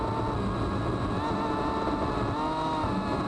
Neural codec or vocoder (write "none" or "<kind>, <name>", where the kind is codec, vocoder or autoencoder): none